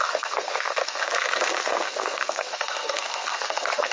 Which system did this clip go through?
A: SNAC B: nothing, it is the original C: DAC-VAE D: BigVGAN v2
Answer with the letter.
A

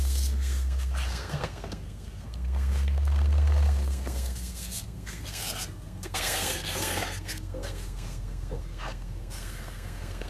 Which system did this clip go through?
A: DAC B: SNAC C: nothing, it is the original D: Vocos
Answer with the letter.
B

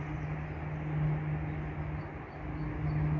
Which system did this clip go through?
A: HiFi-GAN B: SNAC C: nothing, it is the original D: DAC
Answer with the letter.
C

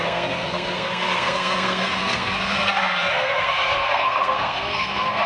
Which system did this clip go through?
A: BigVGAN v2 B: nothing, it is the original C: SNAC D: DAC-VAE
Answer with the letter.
C